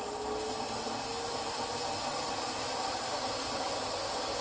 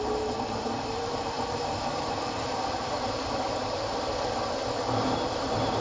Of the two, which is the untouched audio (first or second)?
first